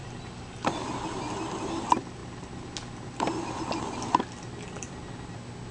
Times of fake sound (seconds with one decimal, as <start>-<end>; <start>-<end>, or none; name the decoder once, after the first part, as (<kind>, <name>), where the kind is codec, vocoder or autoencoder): none